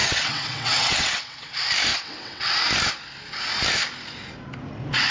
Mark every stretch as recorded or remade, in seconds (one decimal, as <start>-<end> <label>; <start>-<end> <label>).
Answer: 0.0-1.5 remade; 1.5-1.9 recorded; 1.9-2.4 remade; 2.4-5.1 recorded